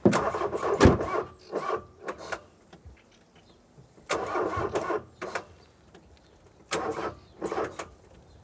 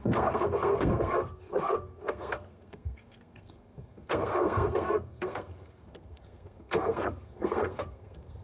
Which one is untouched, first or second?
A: first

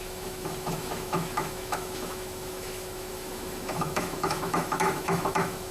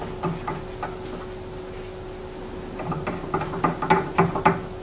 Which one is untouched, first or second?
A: second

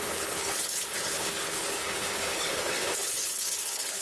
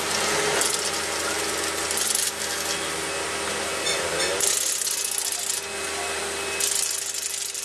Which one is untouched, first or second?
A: second